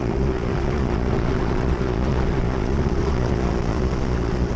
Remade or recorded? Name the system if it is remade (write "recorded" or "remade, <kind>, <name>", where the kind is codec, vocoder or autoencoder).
remade, vocoder, Vocos